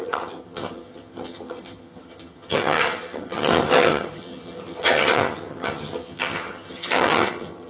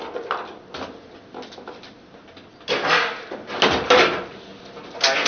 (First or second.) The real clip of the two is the second